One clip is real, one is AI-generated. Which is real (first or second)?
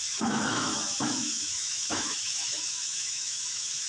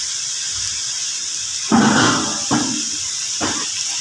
second